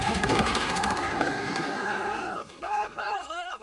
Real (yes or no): no